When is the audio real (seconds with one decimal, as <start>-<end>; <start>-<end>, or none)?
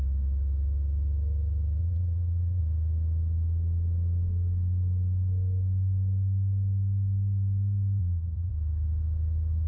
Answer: 0.0-1.8; 2.6-8.0; 8.5-9.7